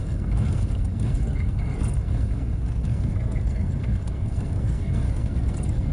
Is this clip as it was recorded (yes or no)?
no